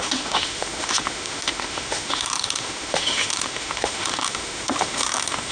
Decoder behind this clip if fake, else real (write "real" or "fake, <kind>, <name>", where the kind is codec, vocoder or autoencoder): fake, autoencoder, DAC-VAE